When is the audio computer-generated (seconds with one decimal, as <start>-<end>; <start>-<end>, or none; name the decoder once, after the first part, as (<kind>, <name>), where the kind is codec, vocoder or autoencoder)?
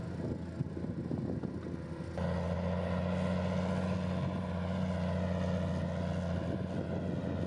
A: none